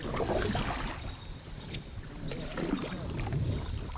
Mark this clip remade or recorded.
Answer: recorded